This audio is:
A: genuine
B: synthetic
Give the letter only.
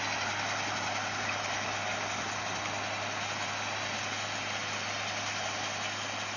A